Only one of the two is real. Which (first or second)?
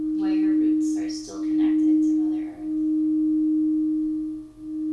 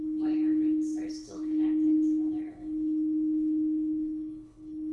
first